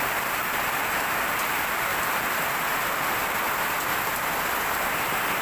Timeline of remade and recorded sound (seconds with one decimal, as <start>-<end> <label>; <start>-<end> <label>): 0.0-5.4 recorded